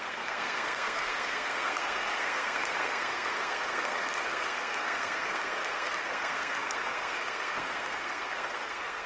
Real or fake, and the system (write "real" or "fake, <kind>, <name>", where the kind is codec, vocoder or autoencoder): fake, codec, SNAC